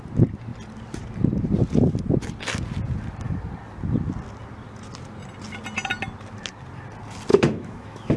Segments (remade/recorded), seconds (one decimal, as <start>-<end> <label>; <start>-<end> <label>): 0.0-7.3 recorded; 7.3-8.2 remade